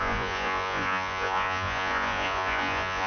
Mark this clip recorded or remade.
remade